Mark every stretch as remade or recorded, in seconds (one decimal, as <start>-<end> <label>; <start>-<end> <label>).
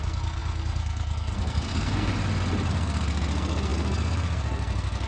0.0-2.1 remade; 2.1-2.7 recorded; 2.7-5.1 remade